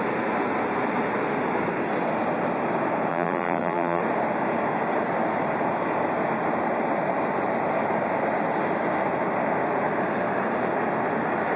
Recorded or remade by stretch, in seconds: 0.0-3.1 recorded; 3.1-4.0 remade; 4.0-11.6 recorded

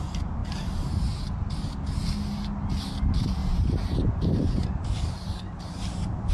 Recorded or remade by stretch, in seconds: 0.0-0.4 recorded; 0.4-1.7 remade; 1.7-3.4 recorded; 3.4-6.3 remade

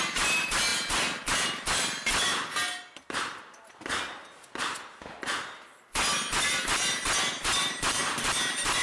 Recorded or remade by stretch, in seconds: 0.0-8.8 recorded

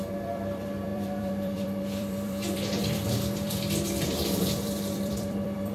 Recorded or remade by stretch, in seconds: 0.0-5.7 remade